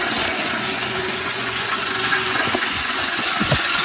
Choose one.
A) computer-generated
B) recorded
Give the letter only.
A